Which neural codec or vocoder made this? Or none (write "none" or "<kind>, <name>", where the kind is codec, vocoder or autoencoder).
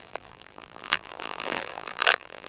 vocoder, BigVGAN v2